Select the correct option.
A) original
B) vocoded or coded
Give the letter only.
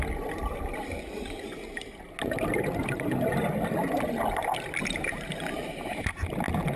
A